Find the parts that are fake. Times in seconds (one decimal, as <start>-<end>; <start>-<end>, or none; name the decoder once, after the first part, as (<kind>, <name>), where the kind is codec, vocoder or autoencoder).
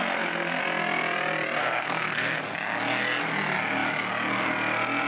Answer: 0.0-0.6 (codec, SNAC); 1.6-2.4